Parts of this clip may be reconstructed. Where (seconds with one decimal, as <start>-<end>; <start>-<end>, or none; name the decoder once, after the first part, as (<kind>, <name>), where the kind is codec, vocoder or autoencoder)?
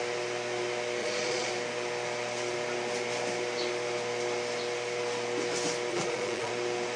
1.0-1.5 (vocoder, Vocos); 5.9-6.5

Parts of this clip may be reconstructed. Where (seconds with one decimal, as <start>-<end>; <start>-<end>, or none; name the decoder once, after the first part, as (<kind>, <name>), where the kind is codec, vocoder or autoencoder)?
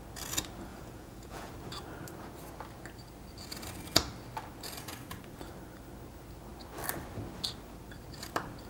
0.7-1.5 (vocoder, Vocos)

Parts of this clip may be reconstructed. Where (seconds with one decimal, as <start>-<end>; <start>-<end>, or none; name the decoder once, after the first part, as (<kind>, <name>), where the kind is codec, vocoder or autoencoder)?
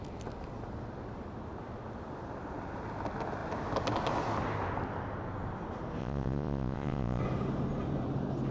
6.0-7.2 (vocoder, Vocos)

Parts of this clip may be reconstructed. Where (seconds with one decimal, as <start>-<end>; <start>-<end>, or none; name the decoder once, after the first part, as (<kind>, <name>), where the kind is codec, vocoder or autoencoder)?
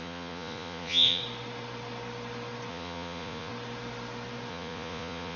0.0-1.2 (vocoder, Vocos); 2.7-3.5; 4.5-5.4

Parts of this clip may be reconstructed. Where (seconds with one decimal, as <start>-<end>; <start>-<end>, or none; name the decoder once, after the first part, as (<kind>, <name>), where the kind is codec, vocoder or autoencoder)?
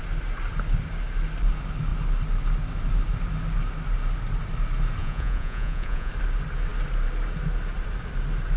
5.0-6.1 (vocoder, Vocos)